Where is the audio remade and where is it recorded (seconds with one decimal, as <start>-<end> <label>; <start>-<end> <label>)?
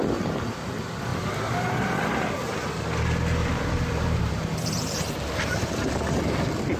0.0-3.4 recorded; 3.4-4.2 remade; 4.2-6.8 recorded